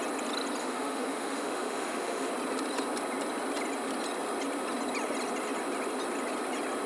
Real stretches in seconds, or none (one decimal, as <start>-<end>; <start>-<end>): 0.0-0.6; 2.3-6.9